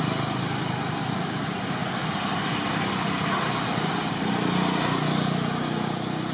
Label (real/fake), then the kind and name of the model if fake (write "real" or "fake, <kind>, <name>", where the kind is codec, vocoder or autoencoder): real